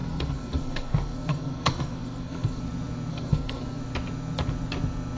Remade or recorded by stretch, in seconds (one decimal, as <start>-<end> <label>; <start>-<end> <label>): 0.0-2.6 remade; 2.6-3.1 recorded; 3.1-3.8 remade; 3.8-5.2 recorded